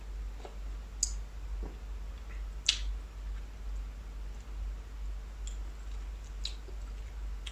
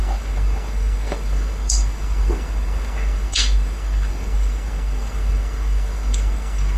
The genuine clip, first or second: first